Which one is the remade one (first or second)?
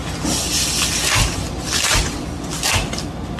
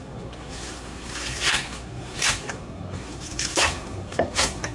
second